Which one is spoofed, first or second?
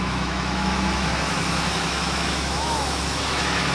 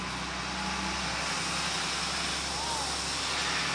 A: first